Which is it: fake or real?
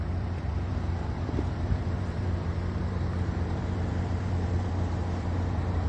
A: fake